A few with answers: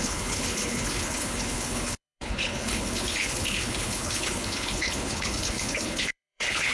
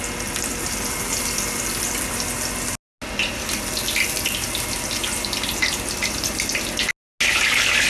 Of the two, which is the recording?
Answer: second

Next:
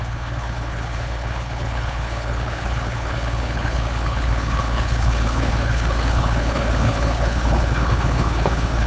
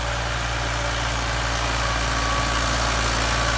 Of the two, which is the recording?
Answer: second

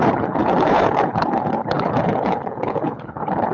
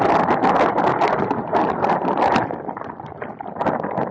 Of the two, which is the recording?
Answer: second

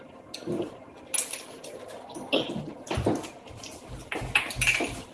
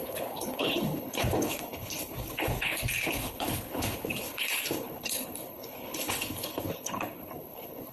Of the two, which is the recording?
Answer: first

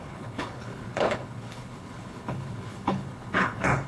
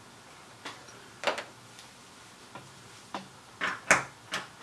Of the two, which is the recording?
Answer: second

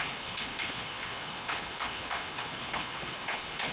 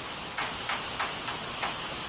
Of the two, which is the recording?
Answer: second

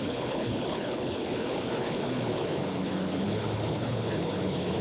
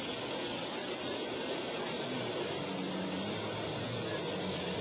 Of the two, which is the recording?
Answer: second